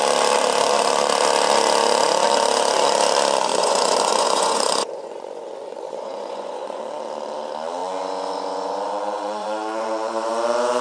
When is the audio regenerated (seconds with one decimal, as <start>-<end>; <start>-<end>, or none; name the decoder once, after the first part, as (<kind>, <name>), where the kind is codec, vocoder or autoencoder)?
3.5-6.8 (vocoder, Vocos); 7.8-10.3